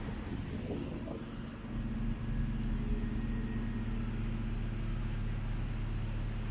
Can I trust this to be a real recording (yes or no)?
yes